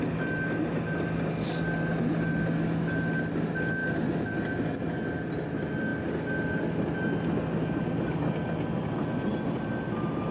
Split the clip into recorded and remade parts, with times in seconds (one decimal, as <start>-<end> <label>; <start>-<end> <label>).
0.0-10.3 recorded